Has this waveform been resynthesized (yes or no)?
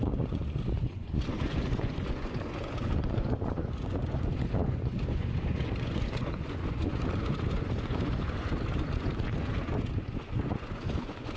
yes